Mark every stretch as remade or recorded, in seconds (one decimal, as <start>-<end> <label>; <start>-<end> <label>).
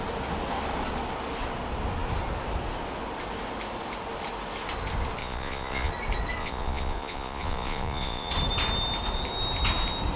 0.0-5.2 recorded; 5.2-5.9 remade; 5.9-6.4 recorded; 6.4-8.3 remade; 8.3-10.2 recorded